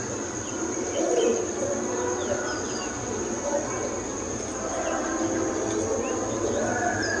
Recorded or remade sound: recorded